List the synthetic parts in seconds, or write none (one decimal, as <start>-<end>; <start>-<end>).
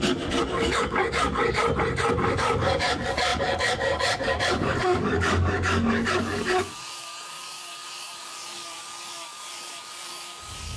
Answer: 0.0-1.6; 2.3-10.8